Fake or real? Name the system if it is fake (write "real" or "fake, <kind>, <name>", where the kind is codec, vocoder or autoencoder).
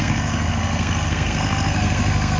fake, codec, SNAC